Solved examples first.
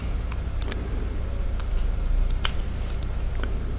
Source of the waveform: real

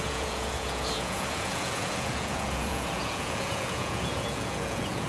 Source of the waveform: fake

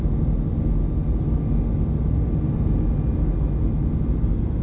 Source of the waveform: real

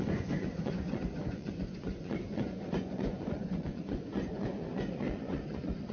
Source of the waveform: fake